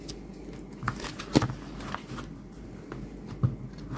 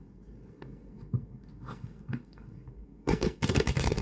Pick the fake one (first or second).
second